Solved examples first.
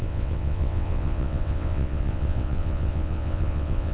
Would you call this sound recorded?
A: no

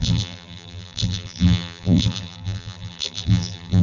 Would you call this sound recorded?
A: no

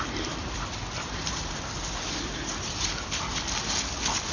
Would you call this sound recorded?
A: yes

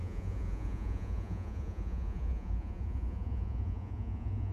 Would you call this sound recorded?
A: no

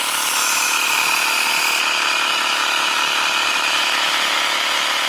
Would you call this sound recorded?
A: no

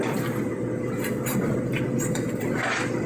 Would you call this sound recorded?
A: no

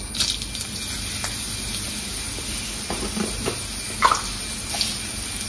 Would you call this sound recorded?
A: yes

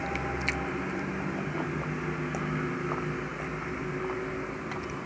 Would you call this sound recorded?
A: yes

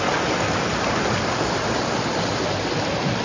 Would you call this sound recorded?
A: yes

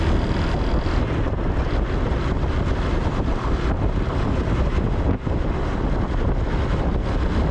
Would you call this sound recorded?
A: yes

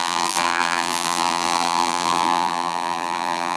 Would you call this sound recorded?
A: no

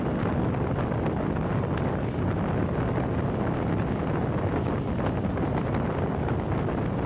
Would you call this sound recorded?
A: yes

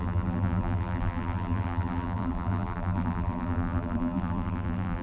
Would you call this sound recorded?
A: no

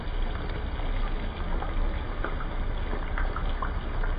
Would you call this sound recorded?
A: yes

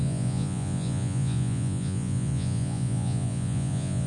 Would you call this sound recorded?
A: no